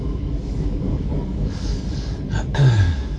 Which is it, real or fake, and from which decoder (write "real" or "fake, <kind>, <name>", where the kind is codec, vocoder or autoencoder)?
fake, codec, DAC